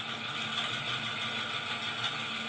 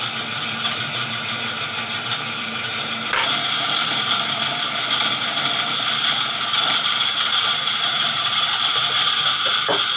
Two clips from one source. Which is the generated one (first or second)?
second